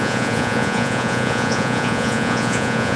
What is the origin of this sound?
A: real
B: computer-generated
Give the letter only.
B